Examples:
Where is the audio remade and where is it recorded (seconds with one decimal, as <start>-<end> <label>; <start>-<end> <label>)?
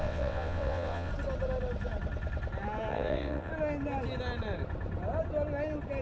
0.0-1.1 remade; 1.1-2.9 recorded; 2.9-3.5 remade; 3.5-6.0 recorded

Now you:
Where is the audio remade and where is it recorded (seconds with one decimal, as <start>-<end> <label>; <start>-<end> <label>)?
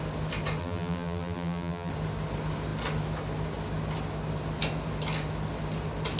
0.0-0.6 recorded; 0.6-1.9 remade; 1.9-6.2 recorded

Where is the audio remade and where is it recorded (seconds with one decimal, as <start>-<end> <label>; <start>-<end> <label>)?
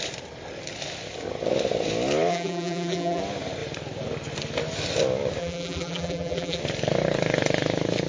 0.0-2.3 recorded; 2.3-3.2 remade; 3.2-5.4 recorded; 5.4-6.6 remade; 6.6-8.1 recorded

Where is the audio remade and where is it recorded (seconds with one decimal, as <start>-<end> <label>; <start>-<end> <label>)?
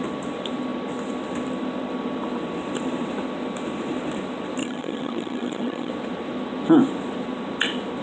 0.0-4.6 recorded; 4.6-5.9 remade; 5.9-8.0 recorded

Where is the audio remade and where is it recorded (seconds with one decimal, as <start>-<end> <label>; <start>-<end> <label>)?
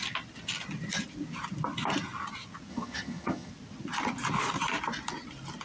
0.0-2.7 recorded; 2.7-3.5 remade; 3.5-5.6 recorded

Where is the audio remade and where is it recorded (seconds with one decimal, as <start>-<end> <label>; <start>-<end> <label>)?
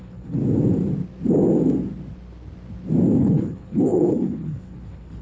0.0-0.4 remade; 0.4-3.2 recorded; 3.2-5.2 remade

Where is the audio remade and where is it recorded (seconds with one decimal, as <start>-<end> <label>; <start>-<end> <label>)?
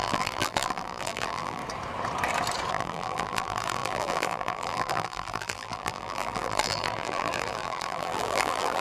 0.0-1.6 remade; 1.6-2.7 recorded; 2.7-8.8 remade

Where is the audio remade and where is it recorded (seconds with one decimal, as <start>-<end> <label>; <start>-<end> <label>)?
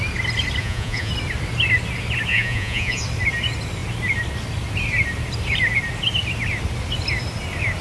0.0-0.6 recorded; 0.6-1.1 remade; 1.1-2.3 recorded; 2.3-3.0 remade; 3.0-7.8 recorded